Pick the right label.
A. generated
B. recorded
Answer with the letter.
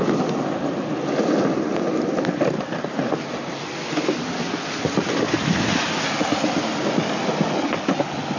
B